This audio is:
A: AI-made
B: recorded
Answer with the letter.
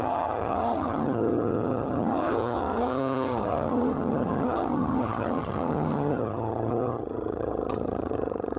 A